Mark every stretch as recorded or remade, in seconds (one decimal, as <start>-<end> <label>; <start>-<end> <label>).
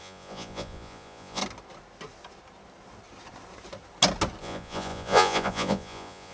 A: 0.0-1.4 remade; 1.4-4.4 recorded; 4.4-6.3 remade